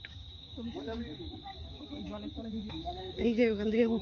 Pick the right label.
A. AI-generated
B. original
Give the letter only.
A